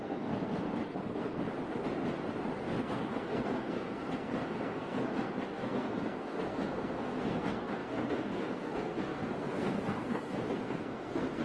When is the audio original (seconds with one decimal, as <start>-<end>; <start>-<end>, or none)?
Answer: 1.4-2.8